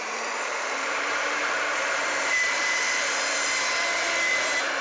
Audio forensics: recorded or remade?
remade